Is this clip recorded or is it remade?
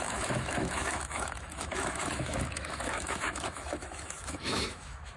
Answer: remade